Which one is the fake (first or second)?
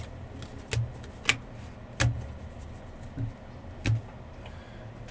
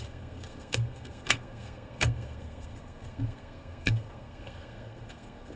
second